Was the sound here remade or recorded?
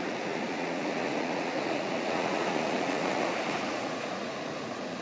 remade